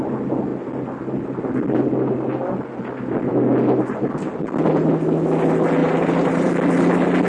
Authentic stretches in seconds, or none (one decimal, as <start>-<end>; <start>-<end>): 0.0-5.8; 6.5-7.3